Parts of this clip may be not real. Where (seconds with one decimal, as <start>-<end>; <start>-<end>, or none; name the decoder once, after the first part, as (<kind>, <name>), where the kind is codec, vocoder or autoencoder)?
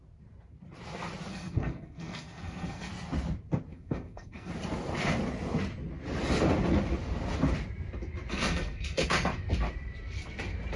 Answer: 1.3-2.9 (codec, SNAC); 3.7-4.5; 8.3-9.3